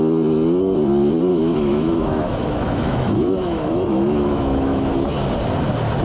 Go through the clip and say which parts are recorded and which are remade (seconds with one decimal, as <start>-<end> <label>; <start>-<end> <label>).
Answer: 0.0-1.3 recorded; 1.3-4.9 remade; 4.9-6.0 recorded